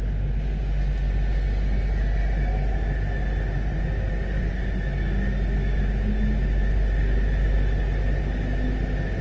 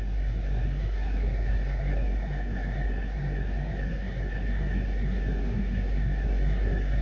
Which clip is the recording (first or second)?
first